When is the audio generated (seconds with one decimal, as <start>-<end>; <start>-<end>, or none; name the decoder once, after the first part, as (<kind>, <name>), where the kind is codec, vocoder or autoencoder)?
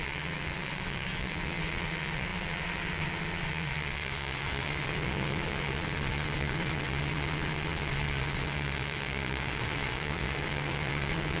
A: 0.0-11.4 (vocoder, WaveNeXt)